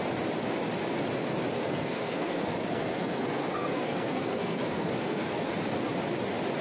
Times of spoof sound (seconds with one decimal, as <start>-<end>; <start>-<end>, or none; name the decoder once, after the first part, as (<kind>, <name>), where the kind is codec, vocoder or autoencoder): 1.6-5.5 (codec, SNAC)